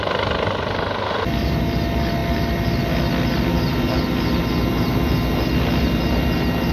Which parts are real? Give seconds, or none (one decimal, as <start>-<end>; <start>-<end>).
0.0-6.7